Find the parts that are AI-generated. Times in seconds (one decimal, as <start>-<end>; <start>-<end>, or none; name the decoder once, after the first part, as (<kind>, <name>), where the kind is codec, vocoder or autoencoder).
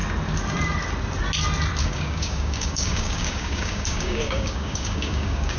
1.8-5.6 (codec, DAC)